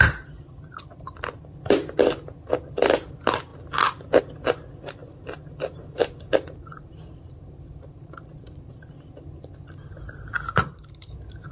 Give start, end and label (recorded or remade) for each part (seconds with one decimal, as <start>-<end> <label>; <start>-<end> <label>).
0.0-5.0 recorded; 5.0-8.8 remade; 8.8-10.6 recorded; 10.6-11.1 remade; 11.1-11.5 recorded